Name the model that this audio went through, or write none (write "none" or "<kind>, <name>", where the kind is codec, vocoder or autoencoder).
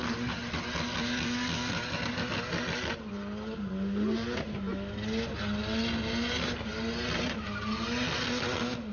none